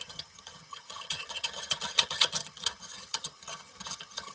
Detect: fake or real fake